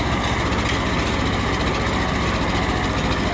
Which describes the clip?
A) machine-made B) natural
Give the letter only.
B